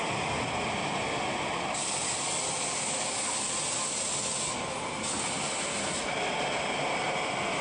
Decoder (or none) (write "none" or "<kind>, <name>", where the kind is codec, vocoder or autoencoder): none